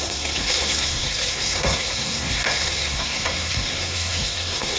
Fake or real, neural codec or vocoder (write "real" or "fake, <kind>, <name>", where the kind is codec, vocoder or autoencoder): fake, codec, SNAC